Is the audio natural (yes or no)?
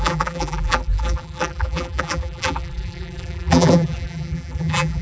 no